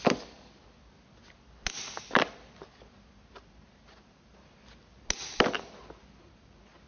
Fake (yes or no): no